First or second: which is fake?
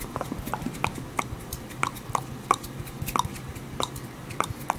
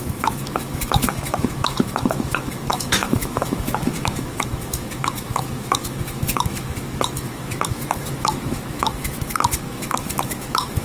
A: second